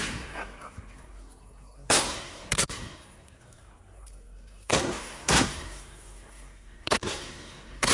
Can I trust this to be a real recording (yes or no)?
no